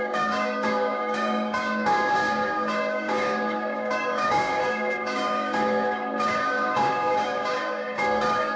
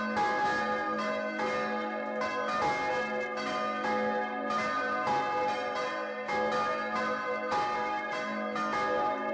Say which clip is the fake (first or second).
first